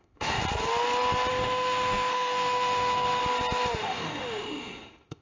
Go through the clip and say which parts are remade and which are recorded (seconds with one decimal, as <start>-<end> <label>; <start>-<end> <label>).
0.0-0.4 remade; 0.4-1.3 recorded; 1.3-3.2 remade; 3.2-3.8 recorded; 3.8-5.2 remade